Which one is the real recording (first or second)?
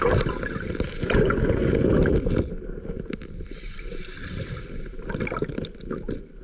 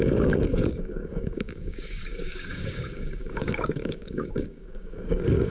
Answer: first